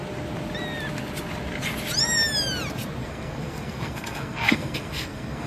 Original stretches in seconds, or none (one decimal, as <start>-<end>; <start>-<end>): 0.0-3.0